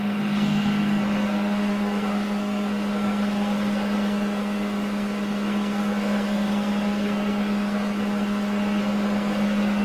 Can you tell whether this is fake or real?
fake